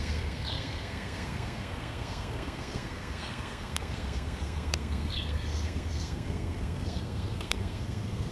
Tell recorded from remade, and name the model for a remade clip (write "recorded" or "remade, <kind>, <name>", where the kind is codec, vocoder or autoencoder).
remade, codec, SNAC